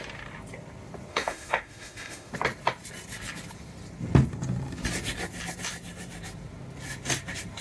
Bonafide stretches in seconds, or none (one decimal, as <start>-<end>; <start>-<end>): 0.0-1.1; 2.3-7.6